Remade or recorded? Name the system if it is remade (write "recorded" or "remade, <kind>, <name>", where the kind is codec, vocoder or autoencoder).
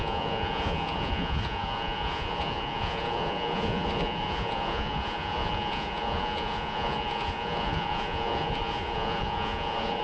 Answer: remade, vocoder, Vocos